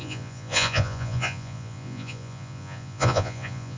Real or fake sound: fake